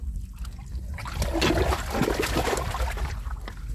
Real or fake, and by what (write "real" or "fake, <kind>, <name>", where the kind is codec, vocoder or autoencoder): real